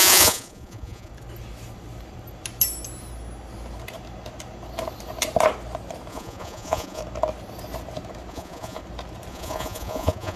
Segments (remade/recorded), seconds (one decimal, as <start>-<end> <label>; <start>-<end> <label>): 0.0-1.1 remade; 1.1-6.1 recorded; 6.1-7.0 remade; 7.0-8.3 recorded; 8.3-8.8 remade; 8.8-9.3 recorded; 9.3-10.4 remade